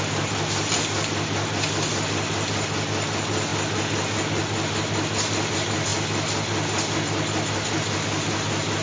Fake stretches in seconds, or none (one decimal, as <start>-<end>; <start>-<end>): none